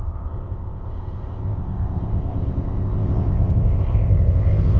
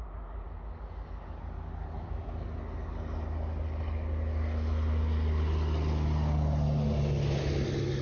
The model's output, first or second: first